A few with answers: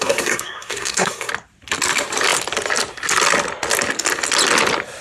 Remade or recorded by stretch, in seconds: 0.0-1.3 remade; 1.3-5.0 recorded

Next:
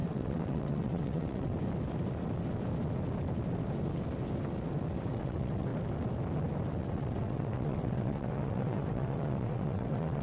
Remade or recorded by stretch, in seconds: 0.0-1.5 remade; 1.5-5.1 recorded; 5.1-5.7 remade; 5.7-6.8 recorded; 6.8-10.2 remade

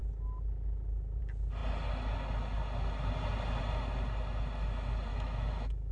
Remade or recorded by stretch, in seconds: 0.0-5.1 recorded; 5.1-5.9 remade

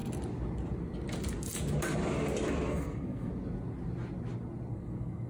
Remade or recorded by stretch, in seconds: 0.0-2.7 recorded; 2.7-3.3 remade; 3.3-4.7 recorded; 4.7-5.3 remade

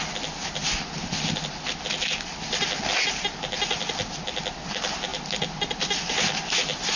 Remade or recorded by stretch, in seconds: 0.0-7.0 recorded

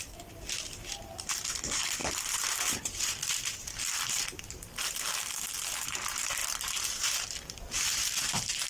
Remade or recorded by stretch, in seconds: 0.0-8.7 recorded

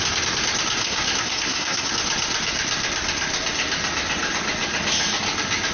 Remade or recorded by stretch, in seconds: 0.0-0.8 recorded; 0.8-1.9 remade; 1.9-5.7 recorded